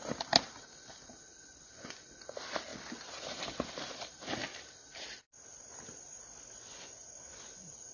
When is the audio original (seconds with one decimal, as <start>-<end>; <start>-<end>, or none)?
0.0-1.4; 2.2-6.6